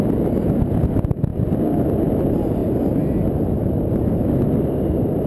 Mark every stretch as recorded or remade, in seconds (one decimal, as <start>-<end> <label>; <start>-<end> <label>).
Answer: 0.0-5.3 recorded